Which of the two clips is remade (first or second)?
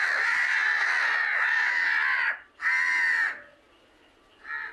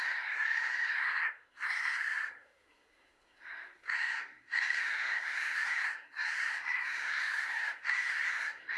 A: second